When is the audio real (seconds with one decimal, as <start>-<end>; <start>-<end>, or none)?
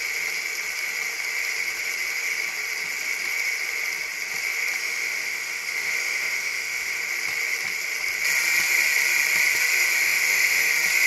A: 0.0-4.8; 7.0-10.0; 10.7-11.1